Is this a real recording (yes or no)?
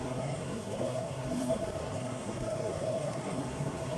no